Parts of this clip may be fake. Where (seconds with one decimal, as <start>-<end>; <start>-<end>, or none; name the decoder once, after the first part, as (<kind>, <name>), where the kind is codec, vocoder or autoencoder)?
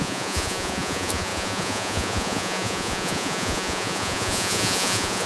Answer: 0.0-5.3 (vocoder, Vocos)